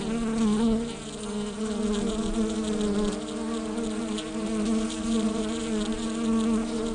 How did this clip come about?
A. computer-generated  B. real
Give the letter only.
B